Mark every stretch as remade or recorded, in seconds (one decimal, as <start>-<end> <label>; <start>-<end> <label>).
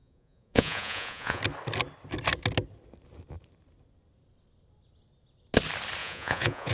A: 0.0-1.4 remade; 1.4-6.0 recorded; 6.0-6.7 remade